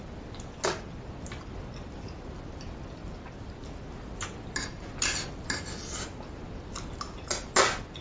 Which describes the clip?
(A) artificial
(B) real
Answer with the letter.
B